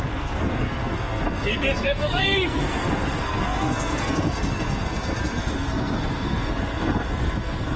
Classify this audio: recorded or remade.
remade